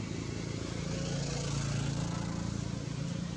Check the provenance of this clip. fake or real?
real